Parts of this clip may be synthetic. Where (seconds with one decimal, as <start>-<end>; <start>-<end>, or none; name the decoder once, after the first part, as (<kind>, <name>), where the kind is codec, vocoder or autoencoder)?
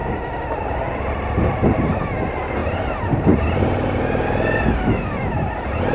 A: none